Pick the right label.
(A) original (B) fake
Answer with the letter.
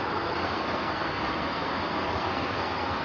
B